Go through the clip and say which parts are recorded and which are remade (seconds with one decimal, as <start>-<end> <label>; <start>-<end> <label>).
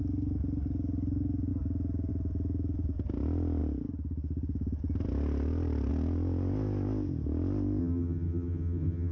0.0-7.8 recorded; 7.8-9.1 remade